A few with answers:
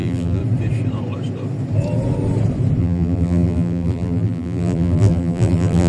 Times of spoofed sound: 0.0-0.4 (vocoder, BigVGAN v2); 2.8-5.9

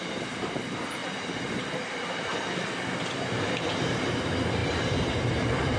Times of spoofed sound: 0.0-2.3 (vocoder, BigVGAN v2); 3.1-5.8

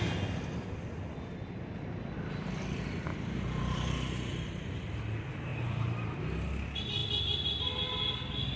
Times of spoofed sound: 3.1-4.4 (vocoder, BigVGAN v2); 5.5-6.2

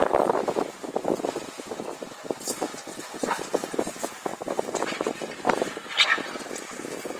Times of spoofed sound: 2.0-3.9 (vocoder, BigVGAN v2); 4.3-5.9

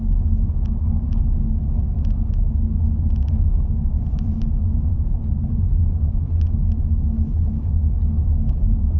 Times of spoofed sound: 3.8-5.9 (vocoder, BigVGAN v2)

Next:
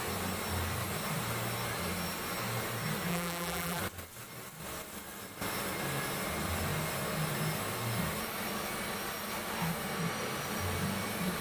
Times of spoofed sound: 3.1-3.8 (vocoder, BigVGAN v2)